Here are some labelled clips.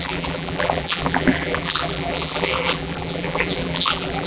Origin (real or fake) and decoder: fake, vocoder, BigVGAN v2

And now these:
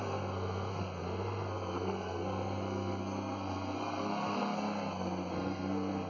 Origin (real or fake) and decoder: fake, codec, SNAC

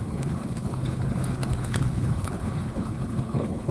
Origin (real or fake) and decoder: fake, codec, HILCodec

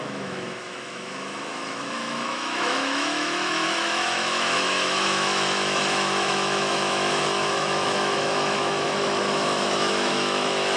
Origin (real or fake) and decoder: fake, autoencoder, DAC-VAE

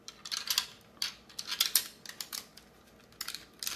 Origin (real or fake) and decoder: real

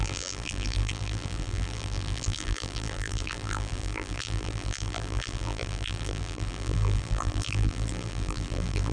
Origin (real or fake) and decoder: fake, vocoder, BigVGAN v2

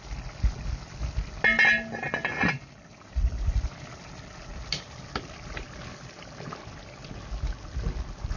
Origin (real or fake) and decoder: real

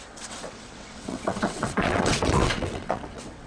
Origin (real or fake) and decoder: fake, vocoder, WaveNeXt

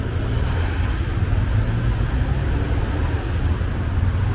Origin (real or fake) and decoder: real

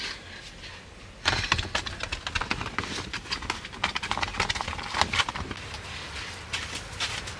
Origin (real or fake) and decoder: real